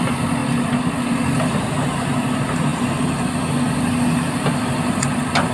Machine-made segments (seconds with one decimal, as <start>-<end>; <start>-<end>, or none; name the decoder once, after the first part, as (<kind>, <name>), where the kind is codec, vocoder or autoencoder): none